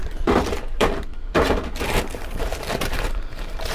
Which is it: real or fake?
fake